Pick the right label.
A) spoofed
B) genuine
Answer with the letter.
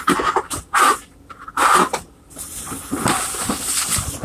B